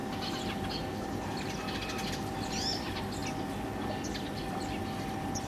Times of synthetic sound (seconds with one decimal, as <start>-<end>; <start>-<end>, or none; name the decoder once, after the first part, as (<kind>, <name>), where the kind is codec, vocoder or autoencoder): none